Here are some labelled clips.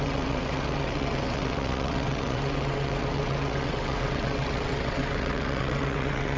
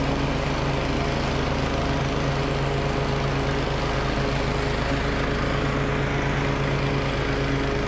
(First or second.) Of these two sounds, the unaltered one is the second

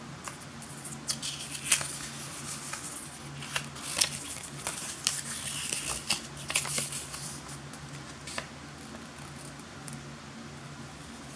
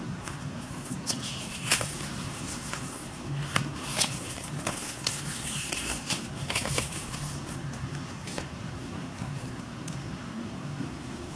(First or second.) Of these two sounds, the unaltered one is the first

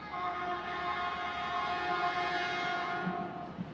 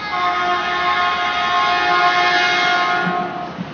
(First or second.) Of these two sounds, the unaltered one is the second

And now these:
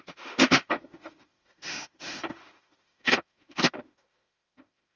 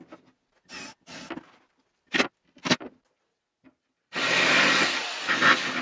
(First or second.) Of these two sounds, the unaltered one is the second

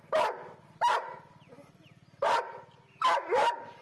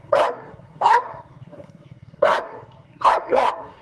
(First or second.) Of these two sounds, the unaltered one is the first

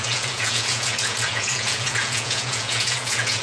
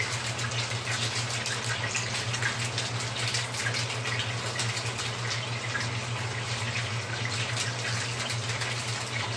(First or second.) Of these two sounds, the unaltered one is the second